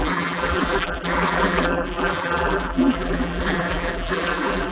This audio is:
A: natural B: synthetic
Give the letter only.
B